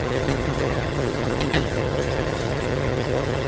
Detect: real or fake fake